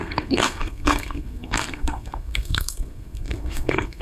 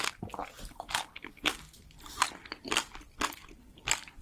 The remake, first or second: first